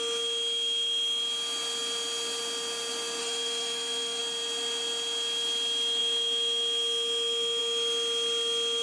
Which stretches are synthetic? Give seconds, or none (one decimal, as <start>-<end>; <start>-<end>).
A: 3.2-4.2